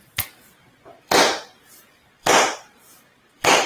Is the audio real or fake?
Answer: fake